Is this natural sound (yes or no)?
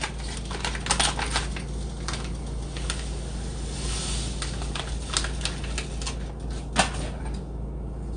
yes